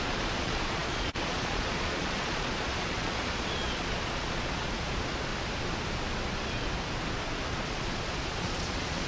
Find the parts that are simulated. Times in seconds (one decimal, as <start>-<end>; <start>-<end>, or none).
0.0-5.3; 7.5-9.1